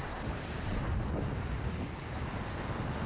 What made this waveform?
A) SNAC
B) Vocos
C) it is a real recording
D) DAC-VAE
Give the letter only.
C